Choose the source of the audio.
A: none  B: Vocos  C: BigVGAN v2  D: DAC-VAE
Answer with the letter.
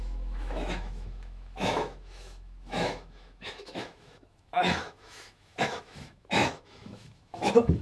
D